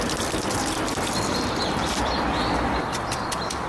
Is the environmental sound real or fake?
real